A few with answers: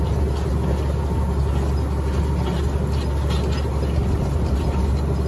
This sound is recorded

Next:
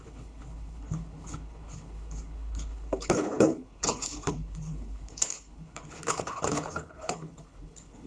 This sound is remade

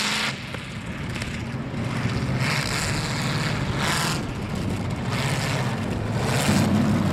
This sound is recorded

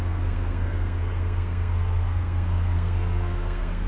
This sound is remade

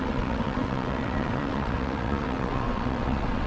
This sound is remade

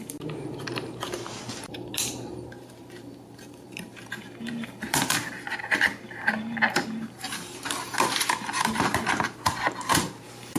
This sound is remade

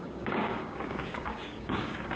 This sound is remade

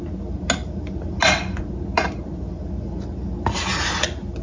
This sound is recorded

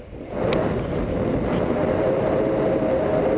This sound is recorded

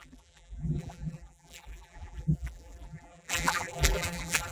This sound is remade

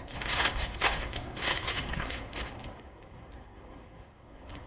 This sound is remade